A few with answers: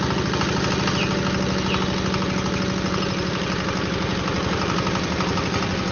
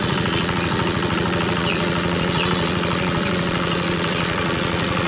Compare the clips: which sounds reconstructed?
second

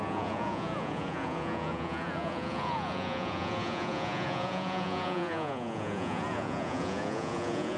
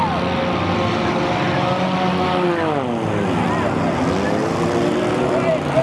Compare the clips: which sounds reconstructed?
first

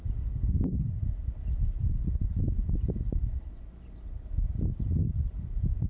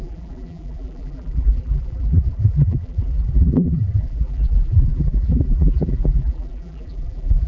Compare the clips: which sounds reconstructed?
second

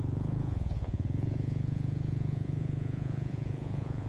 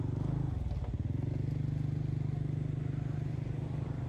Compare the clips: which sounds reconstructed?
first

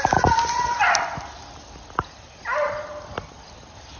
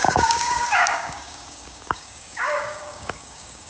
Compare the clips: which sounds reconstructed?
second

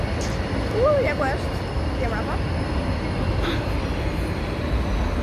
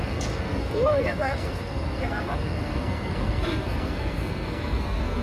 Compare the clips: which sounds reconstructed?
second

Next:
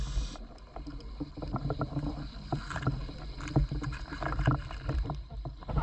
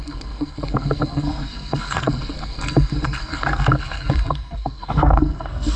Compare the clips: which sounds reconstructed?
second